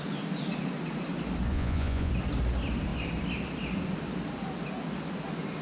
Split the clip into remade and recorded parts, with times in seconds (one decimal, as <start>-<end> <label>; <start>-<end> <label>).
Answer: 0.0-1.5 recorded; 1.5-2.1 remade; 2.1-5.6 recorded